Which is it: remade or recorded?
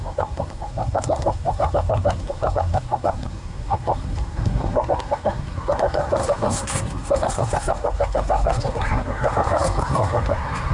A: remade